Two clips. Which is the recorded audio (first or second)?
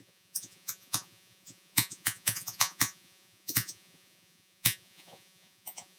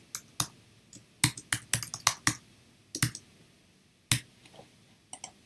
second